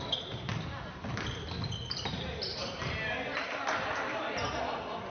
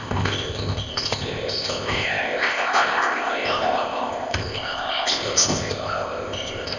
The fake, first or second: second